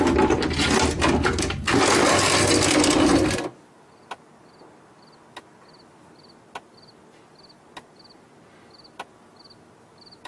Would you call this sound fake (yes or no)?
no